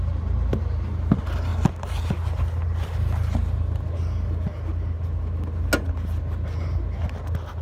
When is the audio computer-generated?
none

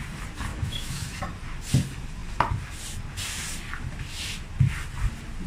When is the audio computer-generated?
0.5-1.2

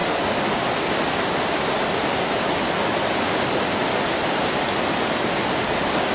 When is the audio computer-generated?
none

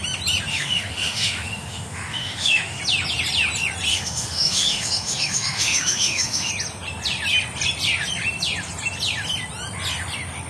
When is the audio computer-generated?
0.5-2.8; 3.9-6.5

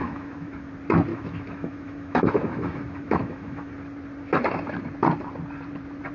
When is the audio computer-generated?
0.0-0.7; 1.1-3.7

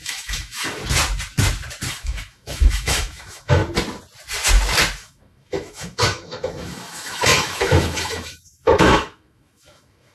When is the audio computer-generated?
0.0-0.8; 1.9-3.6; 5.0-10.1